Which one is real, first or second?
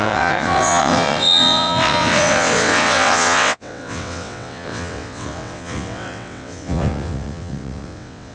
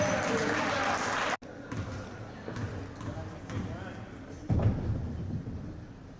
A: second